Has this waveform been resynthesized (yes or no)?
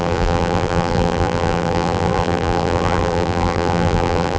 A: yes